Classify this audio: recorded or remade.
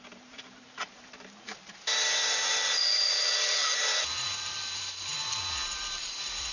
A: remade